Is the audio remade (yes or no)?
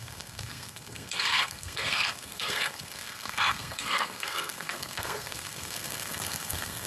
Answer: yes